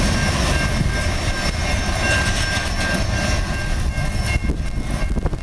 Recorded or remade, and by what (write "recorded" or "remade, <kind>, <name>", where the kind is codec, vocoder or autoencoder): recorded